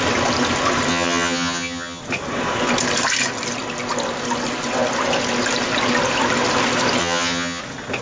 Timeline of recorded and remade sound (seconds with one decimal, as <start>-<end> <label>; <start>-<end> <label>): 0.0-0.9 recorded; 0.9-2.0 remade; 2.0-7.0 recorded; 7.0-7.6 remade; 7.6-8.0 recorded